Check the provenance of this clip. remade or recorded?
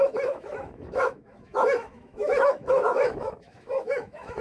remade